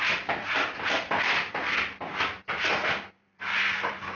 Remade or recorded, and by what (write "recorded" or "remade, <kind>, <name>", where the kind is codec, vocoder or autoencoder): remade, vocoder, BigVGAN v2